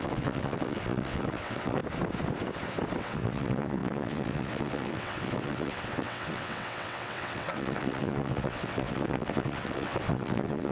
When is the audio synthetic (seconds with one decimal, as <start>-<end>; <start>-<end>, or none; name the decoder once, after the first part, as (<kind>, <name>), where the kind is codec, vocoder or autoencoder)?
0.0-1.8 (vocoder, WaveNeXt); 3.0-10.7